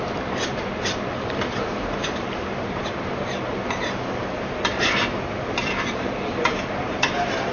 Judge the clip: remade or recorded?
remade